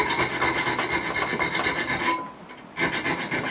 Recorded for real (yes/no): yes